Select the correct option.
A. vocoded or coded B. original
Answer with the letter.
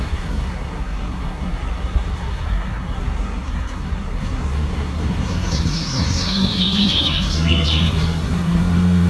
A